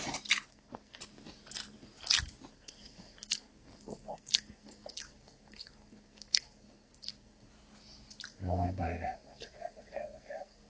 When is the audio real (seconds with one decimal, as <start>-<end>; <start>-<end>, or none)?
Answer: 0.0-0.5; 1.0-2.5; 7.5-8.3